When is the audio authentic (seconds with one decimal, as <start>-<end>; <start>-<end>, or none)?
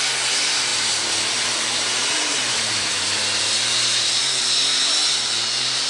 0.0-0.7; 4.2-5.9